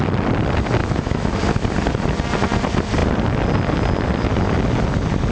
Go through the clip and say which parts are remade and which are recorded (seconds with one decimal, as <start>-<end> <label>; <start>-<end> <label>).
0.0-0.8 recorded; 0.8-1.4 remade; 1.4-5.3 recorded